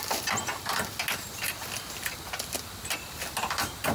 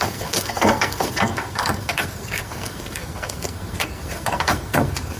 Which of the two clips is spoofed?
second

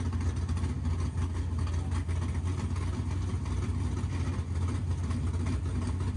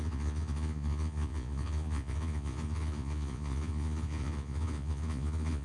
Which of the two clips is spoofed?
second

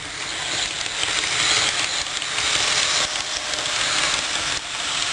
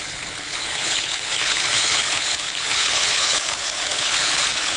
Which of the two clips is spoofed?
second